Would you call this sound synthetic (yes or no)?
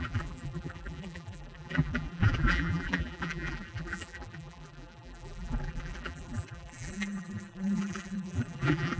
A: yes